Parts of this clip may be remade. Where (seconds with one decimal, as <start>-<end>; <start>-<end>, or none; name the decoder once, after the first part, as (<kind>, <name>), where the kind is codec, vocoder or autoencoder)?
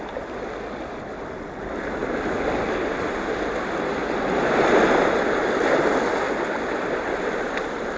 none